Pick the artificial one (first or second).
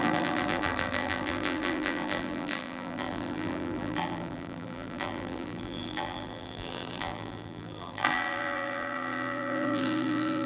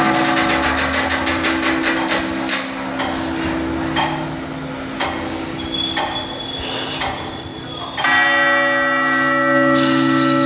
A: first